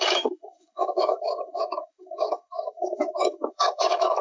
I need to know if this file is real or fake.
fake